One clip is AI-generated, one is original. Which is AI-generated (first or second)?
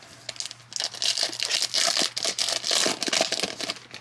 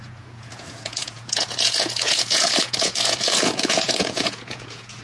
second